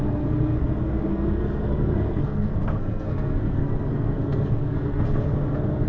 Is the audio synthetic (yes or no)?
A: yes